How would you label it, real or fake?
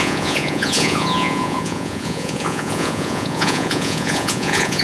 fake